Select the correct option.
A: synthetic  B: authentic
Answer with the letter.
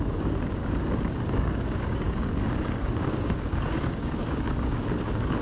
A